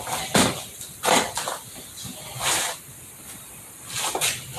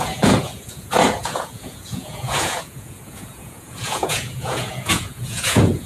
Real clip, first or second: first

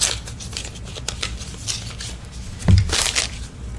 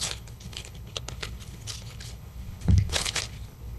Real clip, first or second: first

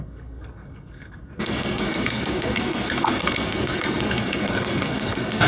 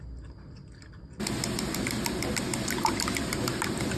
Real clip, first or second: second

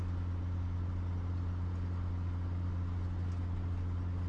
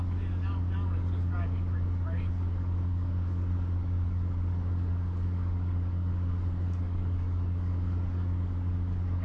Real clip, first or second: first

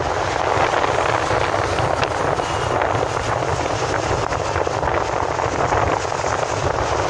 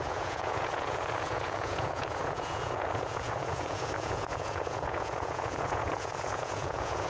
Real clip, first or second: first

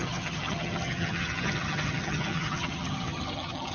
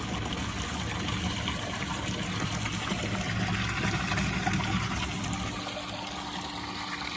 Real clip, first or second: second